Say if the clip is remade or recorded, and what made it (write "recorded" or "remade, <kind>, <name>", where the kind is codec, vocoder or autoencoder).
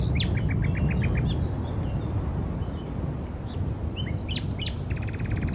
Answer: recorded